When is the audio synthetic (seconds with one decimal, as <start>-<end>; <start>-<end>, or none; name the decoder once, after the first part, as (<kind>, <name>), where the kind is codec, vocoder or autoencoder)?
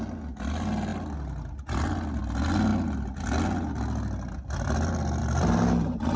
none